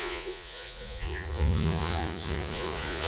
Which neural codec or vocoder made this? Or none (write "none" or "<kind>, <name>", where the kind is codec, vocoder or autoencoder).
vocoder, Vocos